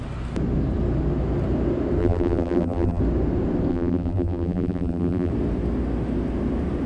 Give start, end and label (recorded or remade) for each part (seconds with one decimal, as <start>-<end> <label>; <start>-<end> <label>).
0.0-2.0 recorded; 2.0-3.0 remade; 3.0-3.7 recorded; 3.7-5.3 remade; 5.3-6.9 recorded